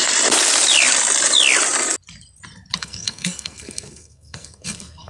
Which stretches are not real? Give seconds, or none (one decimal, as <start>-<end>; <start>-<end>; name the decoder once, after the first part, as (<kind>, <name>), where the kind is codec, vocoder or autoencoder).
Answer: 2.8-5.1 (codec, SNAC)